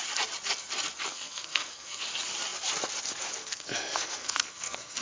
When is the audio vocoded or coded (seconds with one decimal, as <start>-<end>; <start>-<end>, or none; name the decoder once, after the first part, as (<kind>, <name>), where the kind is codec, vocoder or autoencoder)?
1.1-2.0 (codec, SNAC); 3.4-5.0